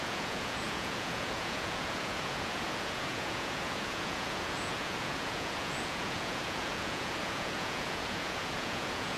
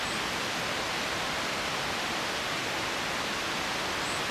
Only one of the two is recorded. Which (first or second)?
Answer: second